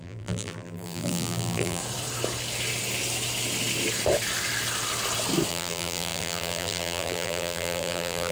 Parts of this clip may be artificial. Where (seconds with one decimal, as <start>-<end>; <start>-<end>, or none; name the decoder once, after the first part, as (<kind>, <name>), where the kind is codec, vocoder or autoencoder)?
0.0-1.8 (vocoder, BigVGAN v2); 5.5-8.3